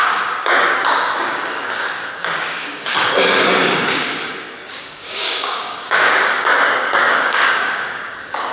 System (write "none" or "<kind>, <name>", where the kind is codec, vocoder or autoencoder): codec, DAC